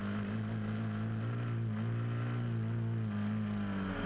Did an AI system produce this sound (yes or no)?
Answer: no